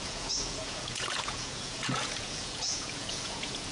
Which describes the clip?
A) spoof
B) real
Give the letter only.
A